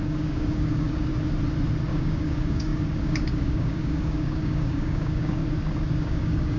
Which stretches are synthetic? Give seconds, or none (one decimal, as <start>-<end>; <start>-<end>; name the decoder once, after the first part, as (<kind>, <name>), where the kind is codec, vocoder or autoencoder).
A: 0.0-1.1 (codec, DAC); 1.9-5.4; 5.9-6.6